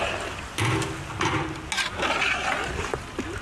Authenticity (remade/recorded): recorded